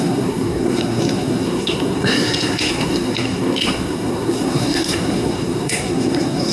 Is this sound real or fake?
fake